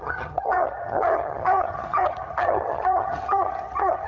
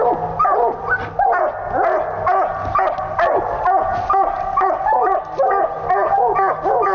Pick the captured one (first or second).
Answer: second